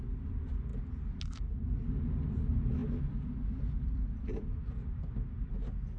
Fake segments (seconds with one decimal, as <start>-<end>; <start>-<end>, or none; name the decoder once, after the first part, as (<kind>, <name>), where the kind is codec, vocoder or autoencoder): 2.8-5.0 (vocoder, BigVGAN v2)

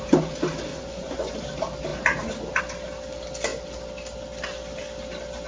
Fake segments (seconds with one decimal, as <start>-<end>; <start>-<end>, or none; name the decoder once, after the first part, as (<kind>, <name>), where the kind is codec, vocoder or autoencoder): 0.7-1.3 (vocoder, Vocos)

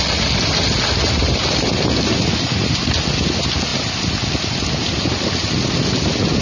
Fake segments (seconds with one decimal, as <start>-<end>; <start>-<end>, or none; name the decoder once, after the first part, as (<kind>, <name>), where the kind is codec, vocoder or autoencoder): none